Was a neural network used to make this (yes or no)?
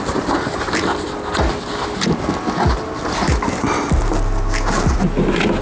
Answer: no